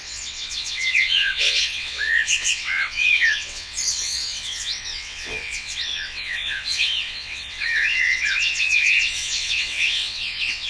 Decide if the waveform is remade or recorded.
remade